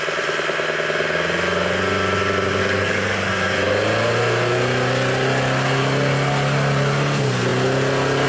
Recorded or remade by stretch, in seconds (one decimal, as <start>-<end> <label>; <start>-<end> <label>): 0.0-2.6 recorded; 2.6-3.3 remade; 3.3-8.3 recorded